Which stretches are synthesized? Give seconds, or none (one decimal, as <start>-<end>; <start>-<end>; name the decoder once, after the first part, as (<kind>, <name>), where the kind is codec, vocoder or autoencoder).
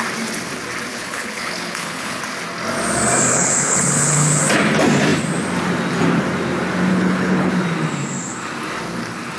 0.9-2.2 (codec, HILCodec); 3.3-4.4; 6.9-7.5